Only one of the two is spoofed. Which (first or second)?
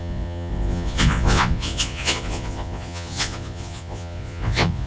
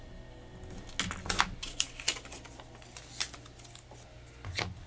first